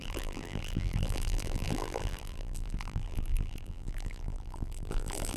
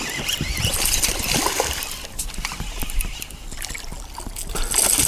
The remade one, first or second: first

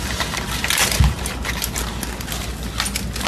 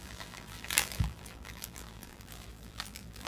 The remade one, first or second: second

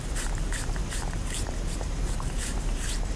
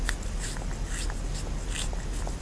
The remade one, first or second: first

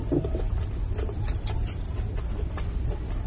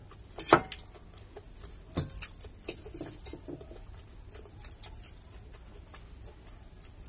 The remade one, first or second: first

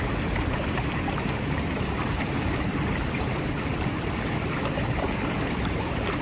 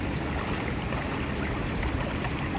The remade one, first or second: first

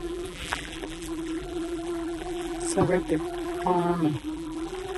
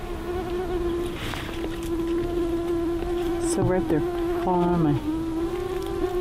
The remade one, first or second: first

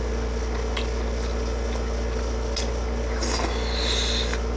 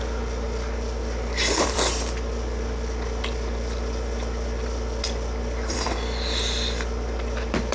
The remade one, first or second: second